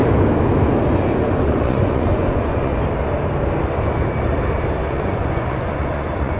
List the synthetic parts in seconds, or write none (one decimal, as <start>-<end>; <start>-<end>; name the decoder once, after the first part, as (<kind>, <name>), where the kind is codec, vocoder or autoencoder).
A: 1.0-2.7 (vocoder, Vocos); 4.9-6.4